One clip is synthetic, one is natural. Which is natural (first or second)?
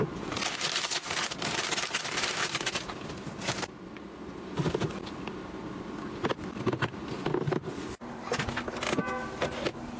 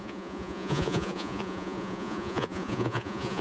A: first